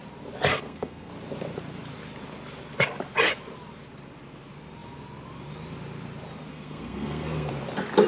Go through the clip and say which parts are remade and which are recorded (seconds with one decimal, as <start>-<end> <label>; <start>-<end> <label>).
0.0-0.5 recorded; 0.5-1.1 remade; 1.1-6.5 recorded; 6.5-7.5 remade; 7.5-8.1 recorded